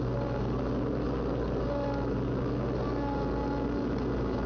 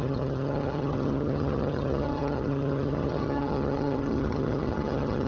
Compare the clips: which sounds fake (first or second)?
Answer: second